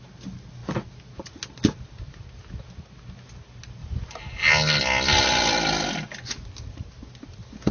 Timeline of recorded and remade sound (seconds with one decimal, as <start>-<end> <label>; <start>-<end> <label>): 0.0-3.8 recorded; 3.8-4.5 remade; 4.5-7.7 recorded